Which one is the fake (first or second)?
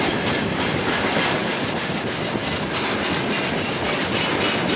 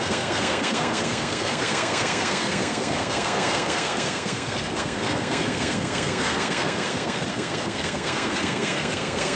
second